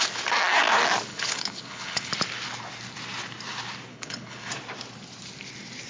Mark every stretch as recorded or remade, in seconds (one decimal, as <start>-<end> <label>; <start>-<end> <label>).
0.0-1.1 recorded; 1.1-2.1 remade; 2.1-3.9 recorded; 3.9-4.5 remade; 4.5-5.9 recorded